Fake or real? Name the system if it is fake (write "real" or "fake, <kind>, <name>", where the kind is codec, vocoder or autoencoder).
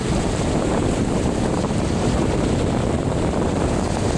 fake, vocoder, BigVGAN v2